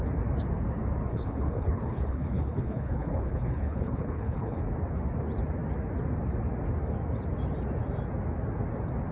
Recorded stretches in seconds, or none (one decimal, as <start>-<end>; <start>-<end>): 0.0-1.1; 4.6-9.1